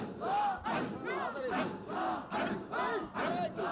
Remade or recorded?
recorded